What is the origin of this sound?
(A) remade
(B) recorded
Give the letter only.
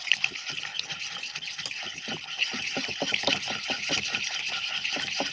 B